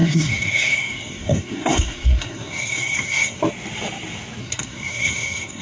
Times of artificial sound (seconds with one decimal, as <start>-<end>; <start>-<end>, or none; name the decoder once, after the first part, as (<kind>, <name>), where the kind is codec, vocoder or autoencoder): 0.0-3.4 (codec, SNAC); 4.4-5.6